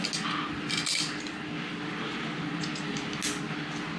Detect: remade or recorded recorded